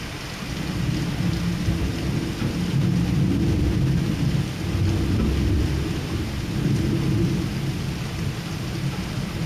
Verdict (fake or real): real